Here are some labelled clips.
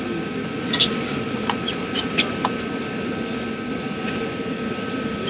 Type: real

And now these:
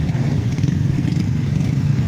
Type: fake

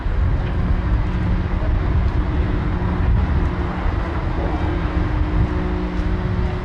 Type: real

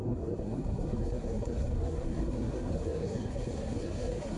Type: fake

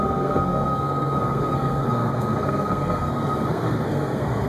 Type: fake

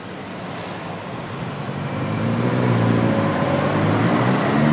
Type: real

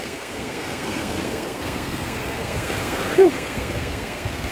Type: fake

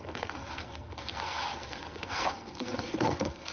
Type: fake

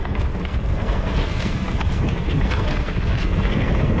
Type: fake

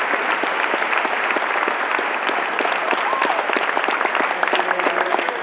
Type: real